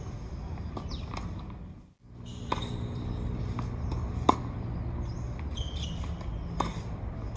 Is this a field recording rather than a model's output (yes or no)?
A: yes